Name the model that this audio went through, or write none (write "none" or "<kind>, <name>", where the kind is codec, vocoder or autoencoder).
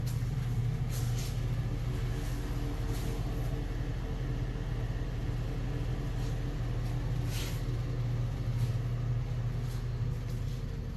none